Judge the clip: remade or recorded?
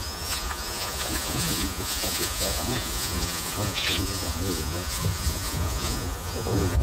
remade